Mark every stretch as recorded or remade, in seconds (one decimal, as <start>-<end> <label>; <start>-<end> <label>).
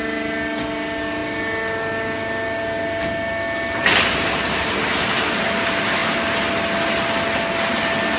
0.0-8.2 recorded